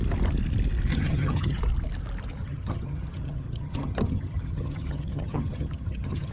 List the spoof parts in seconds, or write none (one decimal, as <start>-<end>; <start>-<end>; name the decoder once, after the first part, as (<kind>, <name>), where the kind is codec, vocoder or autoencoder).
0.9-1.6 (vocoder, HiFi-GAN); 2.4-6.3